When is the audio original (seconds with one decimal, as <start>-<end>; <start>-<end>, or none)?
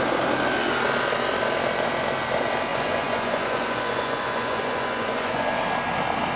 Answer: 0.0-2.7; 5.6-6.4